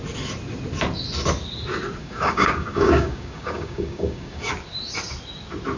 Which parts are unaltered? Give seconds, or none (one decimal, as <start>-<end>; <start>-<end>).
0.0-2.0; 4.5-5.8